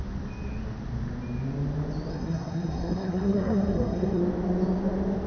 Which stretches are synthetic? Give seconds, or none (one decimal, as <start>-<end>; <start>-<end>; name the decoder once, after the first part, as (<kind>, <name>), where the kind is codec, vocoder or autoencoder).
2.1-4.2 (codec, SNAC)

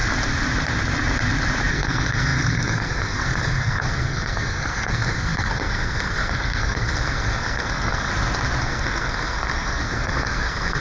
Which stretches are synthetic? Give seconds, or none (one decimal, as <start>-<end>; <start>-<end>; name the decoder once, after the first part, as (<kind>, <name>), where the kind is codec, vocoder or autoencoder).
1.7-8.1 (codec, SNAC); 8.6-10.8

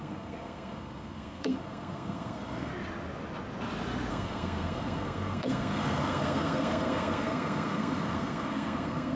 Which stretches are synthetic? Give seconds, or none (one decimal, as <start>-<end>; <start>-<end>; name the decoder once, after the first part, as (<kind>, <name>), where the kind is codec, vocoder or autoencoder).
0.0-2.7 (codec, SNAC); 4.1-9.2

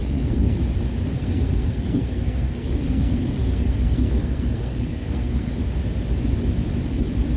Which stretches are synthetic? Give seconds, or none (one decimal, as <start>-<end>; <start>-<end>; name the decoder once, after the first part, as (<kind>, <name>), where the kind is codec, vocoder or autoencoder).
0.0-0.6 (codec, SNAC); 1.1-5.5

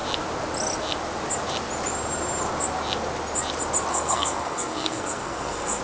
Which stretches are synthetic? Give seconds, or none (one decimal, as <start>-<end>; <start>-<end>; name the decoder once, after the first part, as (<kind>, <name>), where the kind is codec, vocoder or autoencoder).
3.9-5.8 (codec, SNAC)